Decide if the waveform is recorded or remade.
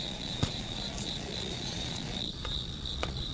remade